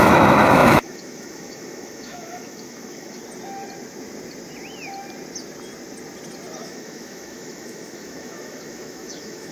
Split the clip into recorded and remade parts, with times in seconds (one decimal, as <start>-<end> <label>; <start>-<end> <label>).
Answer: 0.0-3.2 remade; 3.2-6.6 recorded; 6.6-9.5 remade